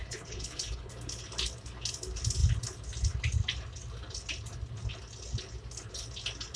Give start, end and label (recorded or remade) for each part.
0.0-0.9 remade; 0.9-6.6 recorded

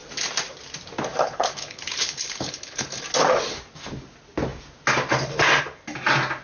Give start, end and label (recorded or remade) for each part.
0.0-1.2 recorded; 1.2-3.0 remade; 3.0-6.4 recorded

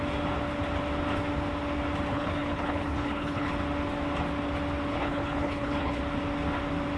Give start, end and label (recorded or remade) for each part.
0.0-2.1 recorded; 2.1-3.5 remade; 3.5-4.9 recorded; 4.9-6.0 remade; 6.0-7.0 recorded

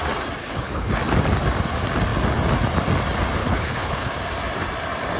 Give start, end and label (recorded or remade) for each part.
0.0-0.4 recorded; 0.4-1.0 remade; 1.0-3.4 recorded; 3.4-4.1 remade; 4.1-5.2 recorded

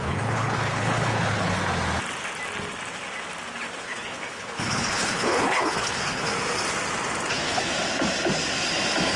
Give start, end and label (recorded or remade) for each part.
0.0-1.6 remade; 1.6-3.8 recorded; 3.8-6.3 remade; 6.3-7.3 recorded; 7.3-7.7 remade; 7.7-9.2 recorded